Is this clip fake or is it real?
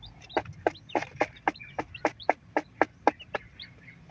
real